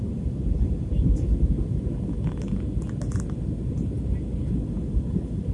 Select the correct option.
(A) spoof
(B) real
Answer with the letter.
B